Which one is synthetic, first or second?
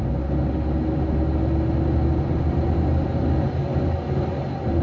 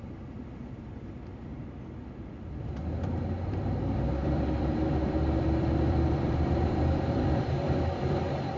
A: second